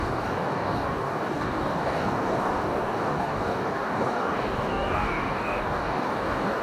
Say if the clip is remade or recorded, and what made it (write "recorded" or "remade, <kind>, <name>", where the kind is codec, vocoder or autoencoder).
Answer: remade, codec, DAC